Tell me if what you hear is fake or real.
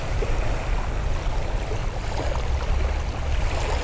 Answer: real